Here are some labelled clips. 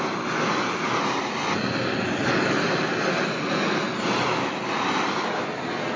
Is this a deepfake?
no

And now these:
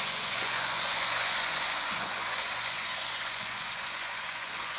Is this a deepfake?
yes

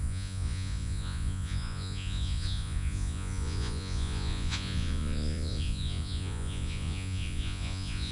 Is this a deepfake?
yes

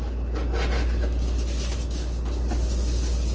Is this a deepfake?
no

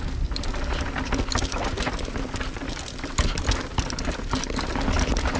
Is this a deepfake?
no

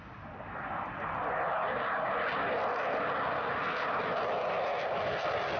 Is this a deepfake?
no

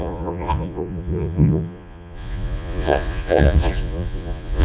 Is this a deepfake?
yes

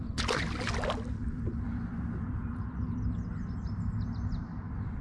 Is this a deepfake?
no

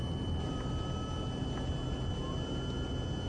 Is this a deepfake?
no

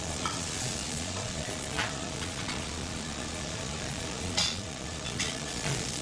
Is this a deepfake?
yes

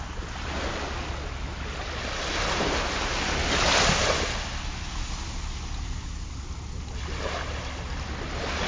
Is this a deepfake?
no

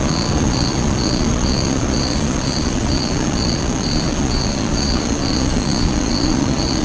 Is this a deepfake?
yes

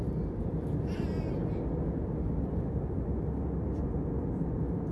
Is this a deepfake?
no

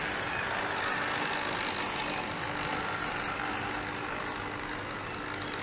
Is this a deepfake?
no